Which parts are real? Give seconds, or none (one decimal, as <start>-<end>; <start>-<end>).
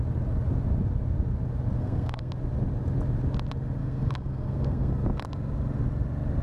0.0-1.8; 2.3-3.8; 4.9-6.4